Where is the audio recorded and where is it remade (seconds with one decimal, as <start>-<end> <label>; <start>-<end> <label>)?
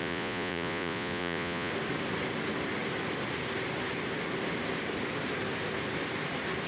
0.0-1.7 remade; 1.7-6.7 recorded